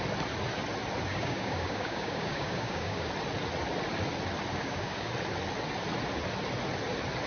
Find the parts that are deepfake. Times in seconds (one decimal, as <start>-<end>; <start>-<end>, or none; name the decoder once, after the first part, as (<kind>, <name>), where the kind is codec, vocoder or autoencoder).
1.1-3.1 (codec, DAC); 4.5-5.1